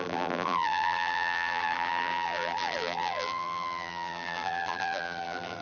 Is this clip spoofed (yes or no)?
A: yes